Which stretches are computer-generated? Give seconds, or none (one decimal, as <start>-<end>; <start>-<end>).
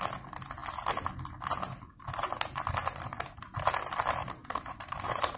4.4-5.4